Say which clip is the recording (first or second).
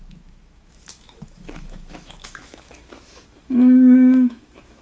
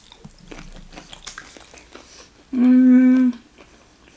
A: second